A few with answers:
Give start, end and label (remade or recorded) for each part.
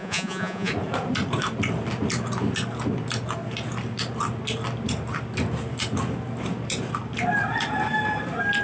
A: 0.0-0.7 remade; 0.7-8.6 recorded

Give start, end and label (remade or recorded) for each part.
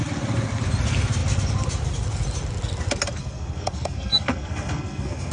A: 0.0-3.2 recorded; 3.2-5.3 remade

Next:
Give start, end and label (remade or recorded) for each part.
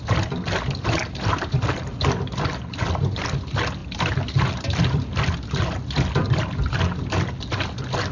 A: 0.0-1.0 recorded; 1.0-2.1 remade; 2.1-3.8 recorded; 3.8-6.4 remade; 6.4-8.1 recorded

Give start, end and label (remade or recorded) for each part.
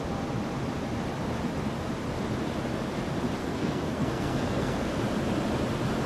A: 0.0-3.4 recorded; 3.4-5.0 remade; 5.0-6.1 recorded